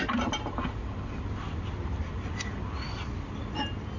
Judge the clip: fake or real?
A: real